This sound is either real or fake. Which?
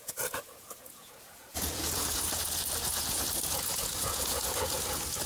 fake